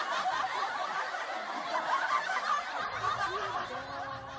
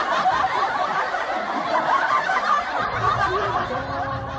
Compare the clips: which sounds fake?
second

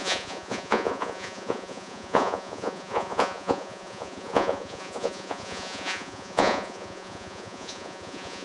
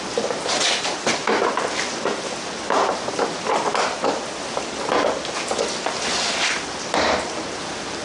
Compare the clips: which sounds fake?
first